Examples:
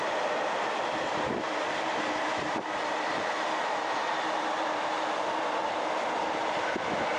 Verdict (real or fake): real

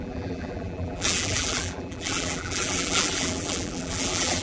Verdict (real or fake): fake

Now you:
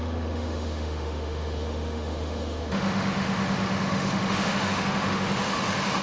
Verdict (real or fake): fake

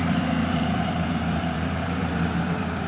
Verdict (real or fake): fake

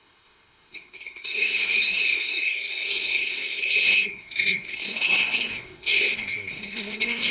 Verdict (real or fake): fake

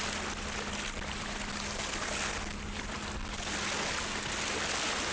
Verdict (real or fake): real